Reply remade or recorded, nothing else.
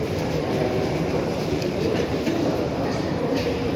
remade